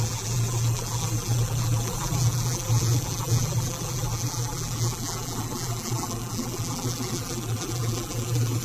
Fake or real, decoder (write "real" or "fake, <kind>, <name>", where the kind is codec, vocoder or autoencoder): fake, vocoder, BigVGAN v2